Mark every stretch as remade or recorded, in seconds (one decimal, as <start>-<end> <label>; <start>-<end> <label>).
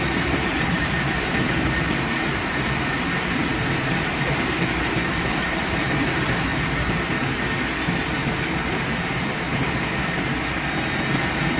0.0-6.5 remade; 6.5-11.1 recorded; 11.1-11.6 remade